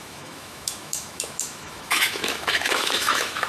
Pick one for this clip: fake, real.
fake